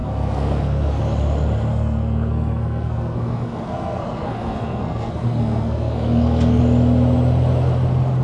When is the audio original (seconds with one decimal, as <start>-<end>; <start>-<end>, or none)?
1.0-1.7; 6.6-8.2